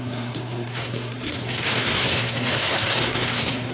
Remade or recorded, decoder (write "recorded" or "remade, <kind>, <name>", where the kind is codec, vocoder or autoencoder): remade, codec, SNAC